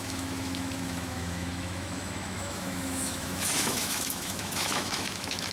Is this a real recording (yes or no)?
no